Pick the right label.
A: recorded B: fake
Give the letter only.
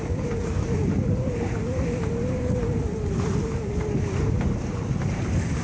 B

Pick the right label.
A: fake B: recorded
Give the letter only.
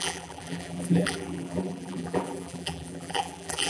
A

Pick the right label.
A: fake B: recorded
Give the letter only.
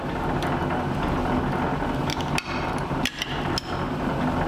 B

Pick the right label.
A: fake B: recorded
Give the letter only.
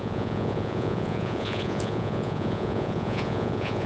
A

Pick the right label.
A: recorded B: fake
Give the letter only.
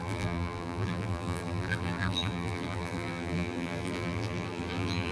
B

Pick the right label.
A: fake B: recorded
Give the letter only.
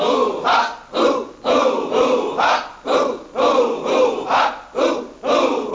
B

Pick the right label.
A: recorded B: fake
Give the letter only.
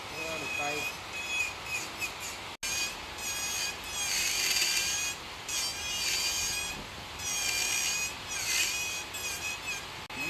A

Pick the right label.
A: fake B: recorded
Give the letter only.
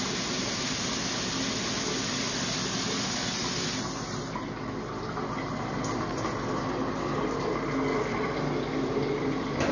B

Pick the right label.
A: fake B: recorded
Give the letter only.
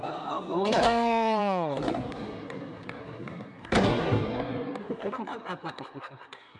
A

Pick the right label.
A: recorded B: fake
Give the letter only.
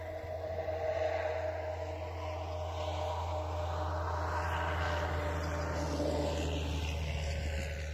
A